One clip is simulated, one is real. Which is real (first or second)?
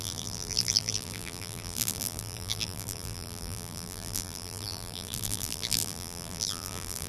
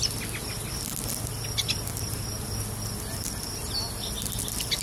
second